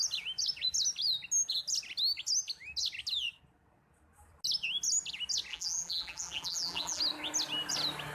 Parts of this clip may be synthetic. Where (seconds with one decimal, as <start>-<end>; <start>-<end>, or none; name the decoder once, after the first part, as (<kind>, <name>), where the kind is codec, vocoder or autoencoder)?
5.5-7.0 (vocoder, BigVGAN v2)